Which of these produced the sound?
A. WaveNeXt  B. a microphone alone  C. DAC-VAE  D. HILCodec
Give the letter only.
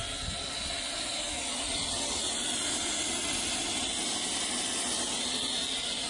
B